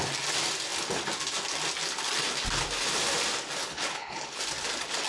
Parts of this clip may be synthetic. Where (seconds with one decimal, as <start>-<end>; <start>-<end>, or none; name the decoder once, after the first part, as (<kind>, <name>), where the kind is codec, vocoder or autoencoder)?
3.6-4.4 (codec, HILCodec)